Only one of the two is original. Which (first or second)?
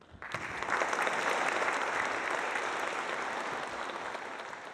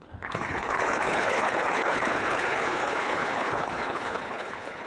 first